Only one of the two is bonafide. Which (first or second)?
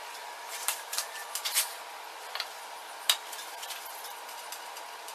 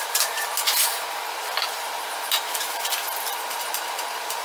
first